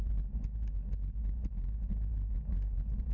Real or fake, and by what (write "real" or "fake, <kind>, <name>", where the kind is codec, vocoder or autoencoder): real